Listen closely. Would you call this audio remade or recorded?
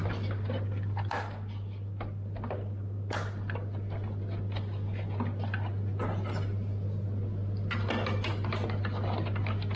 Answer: recorded